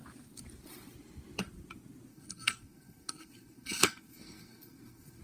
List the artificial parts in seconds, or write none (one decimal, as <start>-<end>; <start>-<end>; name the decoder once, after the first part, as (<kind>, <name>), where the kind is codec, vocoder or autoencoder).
2.1-5.2 (codec, SNAC)